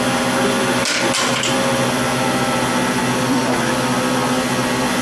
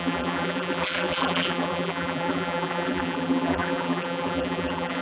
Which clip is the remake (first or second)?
second